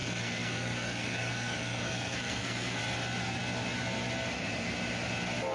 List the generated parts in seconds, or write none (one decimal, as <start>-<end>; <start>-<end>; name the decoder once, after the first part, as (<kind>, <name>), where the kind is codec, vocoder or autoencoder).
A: 0.0-2.8 (codec, SNAC)